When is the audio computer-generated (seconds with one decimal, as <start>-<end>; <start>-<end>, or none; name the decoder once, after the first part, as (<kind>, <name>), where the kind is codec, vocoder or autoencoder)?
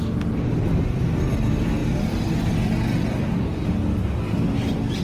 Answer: 1.8-2.5 (vocoder, BigVGAN v2)